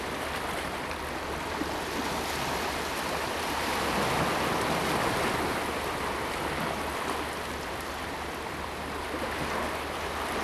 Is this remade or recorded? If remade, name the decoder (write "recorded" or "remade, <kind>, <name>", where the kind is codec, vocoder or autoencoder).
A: recorded